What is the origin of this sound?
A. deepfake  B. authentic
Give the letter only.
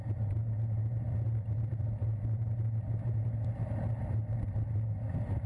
B